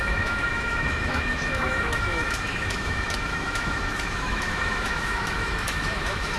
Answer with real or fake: fake